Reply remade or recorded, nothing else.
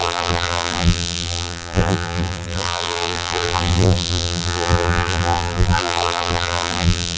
remade